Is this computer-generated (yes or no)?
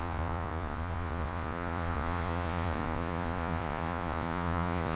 yes